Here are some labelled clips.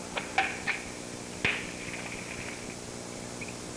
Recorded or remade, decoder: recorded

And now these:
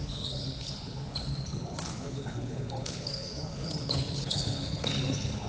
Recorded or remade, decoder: remade, codec, HILCodec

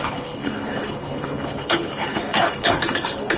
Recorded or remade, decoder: remade, codec, HILCodec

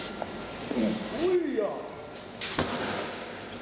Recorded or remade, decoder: recorded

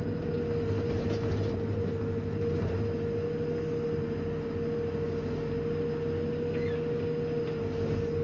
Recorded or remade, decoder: recorded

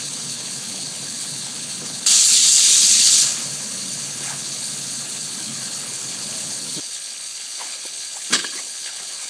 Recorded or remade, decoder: remade, codec, HILCodec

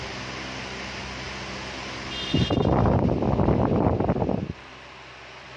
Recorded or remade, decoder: recorded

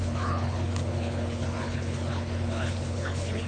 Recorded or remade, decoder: remade, codec, HILCodec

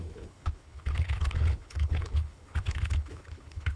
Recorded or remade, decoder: remade, codec, HILCodec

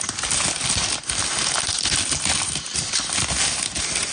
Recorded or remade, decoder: recorded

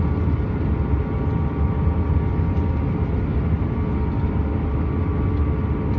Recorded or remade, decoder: recorded